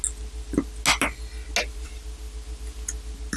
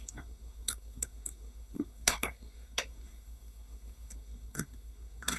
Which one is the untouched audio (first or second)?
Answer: first